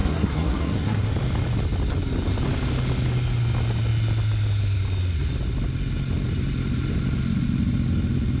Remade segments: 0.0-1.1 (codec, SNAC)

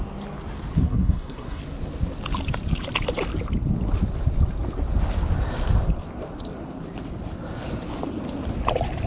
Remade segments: 0.8-1.6 (codec, SNAC)

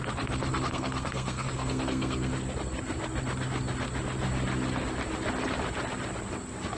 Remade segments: 0.7-2.3 (codec, SNAC)

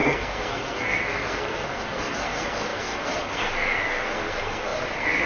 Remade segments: 0.0-5.3 (codec, SNAC)

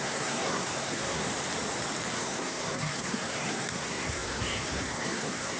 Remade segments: 0.0-1.3 (codec, SNAC); 2.1-5.6